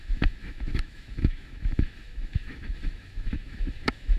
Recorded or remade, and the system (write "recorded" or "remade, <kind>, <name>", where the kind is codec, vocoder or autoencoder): remade, autoencoder, DAC-VAE